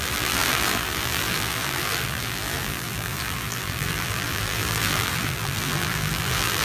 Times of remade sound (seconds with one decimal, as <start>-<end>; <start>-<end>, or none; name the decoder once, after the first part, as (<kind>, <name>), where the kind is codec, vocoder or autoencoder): 0.0-6.6 (vocoder, BigVGAN v2)